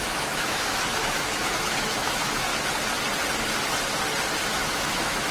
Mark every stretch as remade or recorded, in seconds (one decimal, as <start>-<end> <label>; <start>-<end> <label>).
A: 0.0-2.5 remade; 2.5-4.5 recorded; 4.5-5.3 remade